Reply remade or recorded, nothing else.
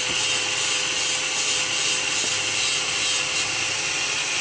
recorded